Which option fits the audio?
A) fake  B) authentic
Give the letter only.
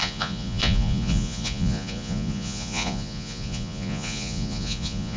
A